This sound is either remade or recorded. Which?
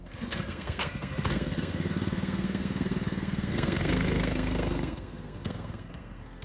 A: remade